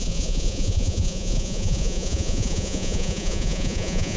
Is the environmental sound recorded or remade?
remade